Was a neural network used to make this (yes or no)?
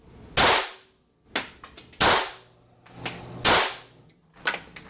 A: no